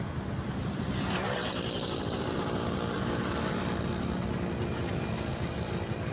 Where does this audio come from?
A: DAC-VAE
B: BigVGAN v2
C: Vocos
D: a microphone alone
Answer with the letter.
D